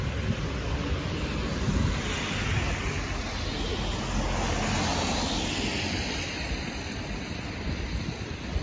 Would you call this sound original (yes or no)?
yes